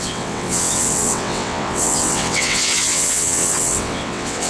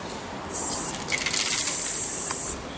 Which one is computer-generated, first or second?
first